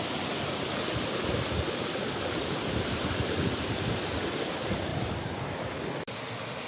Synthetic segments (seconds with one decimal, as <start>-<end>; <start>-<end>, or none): 4.9-5.4